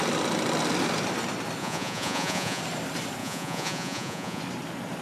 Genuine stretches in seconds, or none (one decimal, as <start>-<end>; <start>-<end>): 0.0-1.6; 2.6-3.2; 4.4-5.0